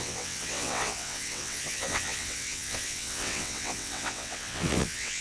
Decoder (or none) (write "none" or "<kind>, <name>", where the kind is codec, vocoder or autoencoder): vocoder, WaveNeXt